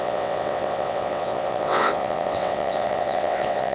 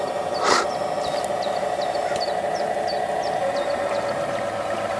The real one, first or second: second